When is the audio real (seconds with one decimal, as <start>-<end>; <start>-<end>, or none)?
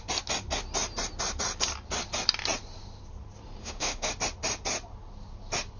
0.0-3.6; 4.1-5.8